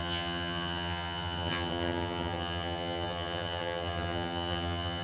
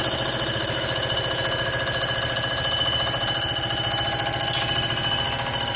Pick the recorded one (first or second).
second